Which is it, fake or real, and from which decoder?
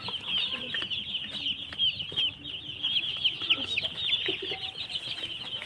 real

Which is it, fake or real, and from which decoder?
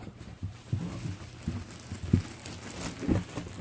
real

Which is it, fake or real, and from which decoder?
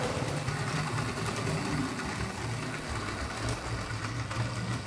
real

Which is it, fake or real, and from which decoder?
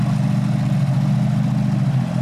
real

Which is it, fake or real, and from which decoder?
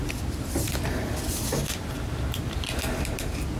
fake, vocoder, BigVGAN v2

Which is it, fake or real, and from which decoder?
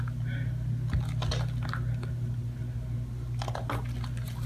real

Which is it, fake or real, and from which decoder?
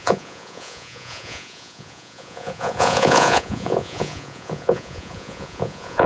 fake, vocoder, Vocos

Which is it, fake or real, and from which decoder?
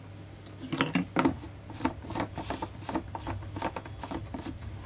real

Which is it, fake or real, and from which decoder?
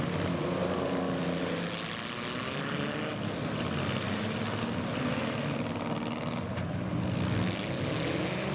real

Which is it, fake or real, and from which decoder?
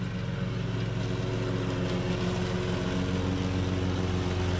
real